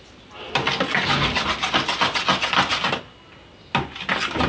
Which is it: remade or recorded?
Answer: recorded